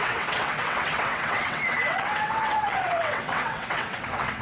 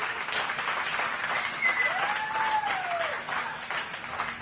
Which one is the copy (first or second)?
first